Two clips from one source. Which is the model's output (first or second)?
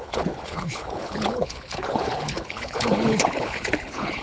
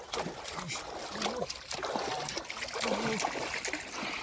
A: first